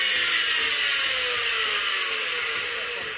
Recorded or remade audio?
recorded